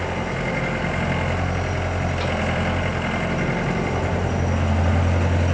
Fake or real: real